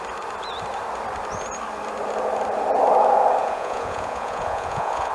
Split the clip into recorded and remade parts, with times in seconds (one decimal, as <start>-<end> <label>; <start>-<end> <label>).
0.0-3.4 recorded; 3.4-5.1 remade